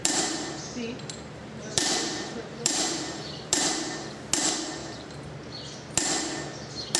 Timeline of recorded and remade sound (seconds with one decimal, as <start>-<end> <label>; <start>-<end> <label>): 0.0-0.6 remade; 0.6-1.4 recorded; 1.4-3.7 remade; 3.7-4.8 recorded; 4.8-5.4 remade; 5.4-7.0 recorded